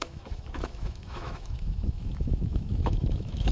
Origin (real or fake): fake